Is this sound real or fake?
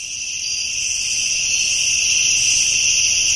real